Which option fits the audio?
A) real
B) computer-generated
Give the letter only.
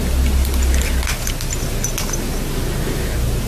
A